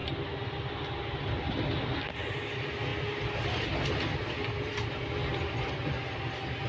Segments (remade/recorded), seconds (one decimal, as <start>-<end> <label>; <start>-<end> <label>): 0.0-6.7 recorded